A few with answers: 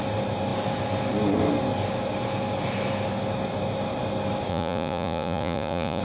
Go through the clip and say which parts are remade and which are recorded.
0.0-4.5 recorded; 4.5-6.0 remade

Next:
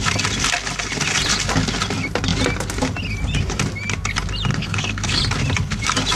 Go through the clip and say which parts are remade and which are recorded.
0.0-4.5 recorded; 4.5-5.2 remade; 5.2-6.2 recorded

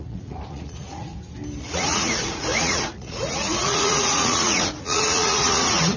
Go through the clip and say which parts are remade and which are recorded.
0.0-1.1 remade; 1.1-1.6 recorded; 1.6-6.0 remade

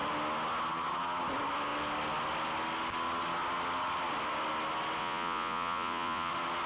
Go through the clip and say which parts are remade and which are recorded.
0.0-5.0 recorded; 5.0-6.3 remade; 6.3-6.7 recorded

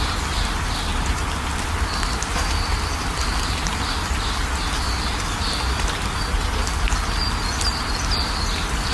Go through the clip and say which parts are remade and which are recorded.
0.0-8.9 recorded